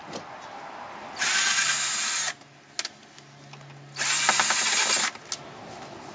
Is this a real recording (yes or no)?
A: yes